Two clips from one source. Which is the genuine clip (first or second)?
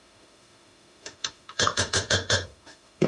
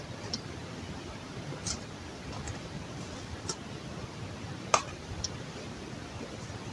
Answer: second